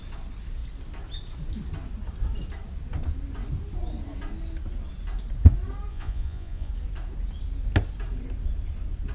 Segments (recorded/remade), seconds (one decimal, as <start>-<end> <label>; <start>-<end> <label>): 0.0-5.9 recorded; 5.9-6.7 remade; 6.7-9.1 recorded